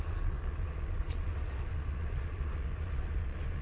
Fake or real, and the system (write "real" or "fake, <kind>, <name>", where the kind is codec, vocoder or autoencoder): fake, vocoder, Vocos